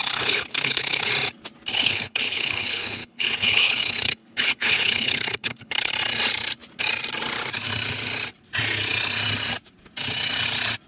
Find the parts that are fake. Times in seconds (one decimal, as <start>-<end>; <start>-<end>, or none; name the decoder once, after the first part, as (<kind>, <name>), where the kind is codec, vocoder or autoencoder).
0.0-1.1 (codec, HILCodec); 1.7-5.9